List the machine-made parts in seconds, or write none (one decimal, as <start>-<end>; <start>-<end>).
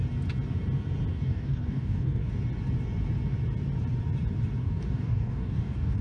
1.1-2.3; 4.6-6.0